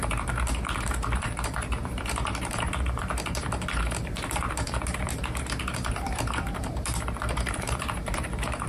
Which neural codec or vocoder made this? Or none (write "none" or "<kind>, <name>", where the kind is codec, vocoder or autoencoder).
vocoder, BigVGAN v2